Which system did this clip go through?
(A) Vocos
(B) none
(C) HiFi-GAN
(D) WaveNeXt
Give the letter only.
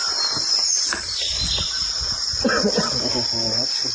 B